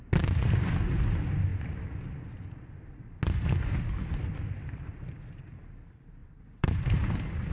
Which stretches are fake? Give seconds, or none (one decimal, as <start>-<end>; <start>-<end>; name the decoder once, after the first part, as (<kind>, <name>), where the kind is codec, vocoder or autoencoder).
6.2-7.5 (vocoder, BigVGAN v2)